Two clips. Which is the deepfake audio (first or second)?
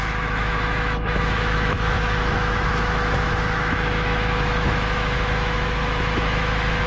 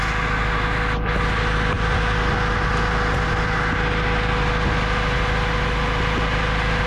first